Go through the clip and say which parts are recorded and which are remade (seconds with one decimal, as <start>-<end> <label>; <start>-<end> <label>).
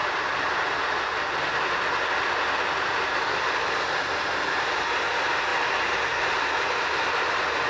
0.0-7.7 recorded